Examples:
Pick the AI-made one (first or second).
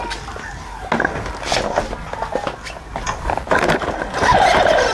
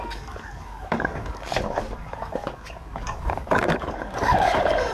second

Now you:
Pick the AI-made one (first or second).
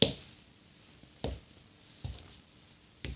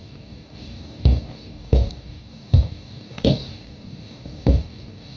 second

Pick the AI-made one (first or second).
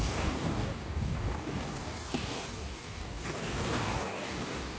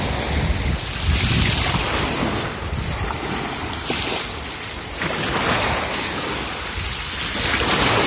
first